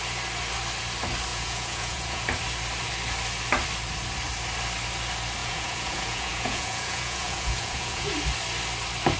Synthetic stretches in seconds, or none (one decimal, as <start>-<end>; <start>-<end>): 1.3-2.2; 5.4-8.1